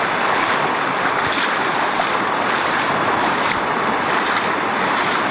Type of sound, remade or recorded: recorded